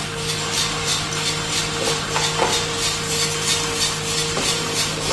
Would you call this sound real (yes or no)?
yes